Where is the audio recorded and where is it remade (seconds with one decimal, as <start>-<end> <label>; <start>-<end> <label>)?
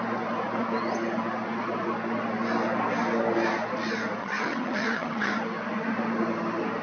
0.0-4.2 recorded; 4.2-5.3 remade; 5.3-6.8 recorded